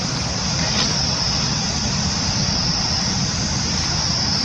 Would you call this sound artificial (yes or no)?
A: yes